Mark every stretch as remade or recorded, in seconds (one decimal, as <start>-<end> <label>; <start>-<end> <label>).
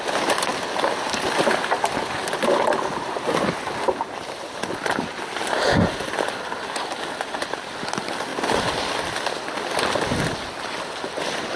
0.0-11.6 recorded